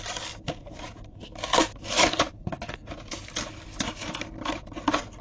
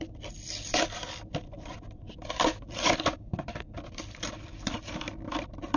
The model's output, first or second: second